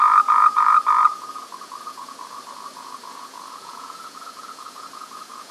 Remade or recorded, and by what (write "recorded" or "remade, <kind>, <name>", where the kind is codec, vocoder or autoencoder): remade, vocoder, Vocos